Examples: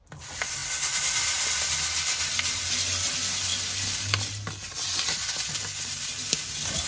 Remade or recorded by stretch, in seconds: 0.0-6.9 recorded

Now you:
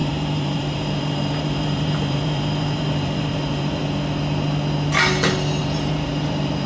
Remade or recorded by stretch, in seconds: 0.0-3.8 remade; 3.8-5.6 recorded; 5.6-6.7 remade

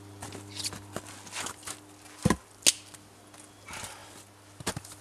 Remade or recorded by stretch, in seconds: 0.0-5.0 recorded

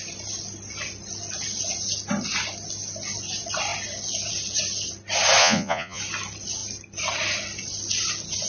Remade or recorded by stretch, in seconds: 0.0-5.4 recorded; 5.4-6.0 remade; 6.0-8.5 recorded

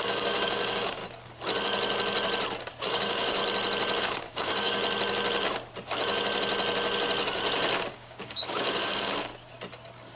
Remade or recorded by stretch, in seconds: 0.0-1.0 remade; 1.0-2.8 recorded; 2.8-3.4 remade; 3.4-4.0 recorded; 4.0-4.8 remade; 4.8-7.9 recorded; 7.9-9.3 remade; 9.3-10.2 recorded

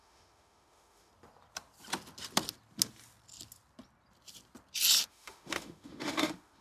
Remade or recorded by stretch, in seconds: 0.0-1.1 remade; 1.1-5.1 recorded; 5.1-6.6 remade

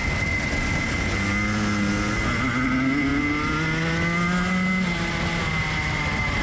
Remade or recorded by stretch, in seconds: 0.0-6.4 recorded

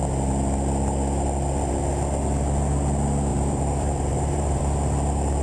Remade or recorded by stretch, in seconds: 0.0-3.3 recorded; 3.3-4.6 remade; 4.6-5.4 recorded